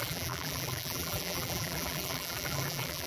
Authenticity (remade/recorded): remade